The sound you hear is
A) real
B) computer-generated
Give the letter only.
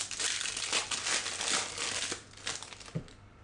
A